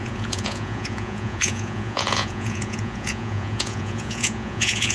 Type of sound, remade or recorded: remade